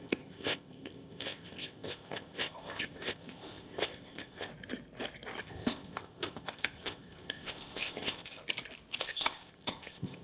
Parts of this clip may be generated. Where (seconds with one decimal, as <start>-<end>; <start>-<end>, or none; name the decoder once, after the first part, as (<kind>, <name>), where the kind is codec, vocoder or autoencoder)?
0.0-4.5 (codec, ZipCodec); 5.4-8.4; 9.0-10.2